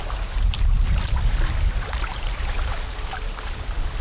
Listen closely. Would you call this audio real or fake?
real